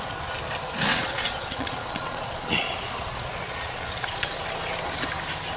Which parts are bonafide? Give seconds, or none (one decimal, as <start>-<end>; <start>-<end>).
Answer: 0.0-0.9; 4.3-5.6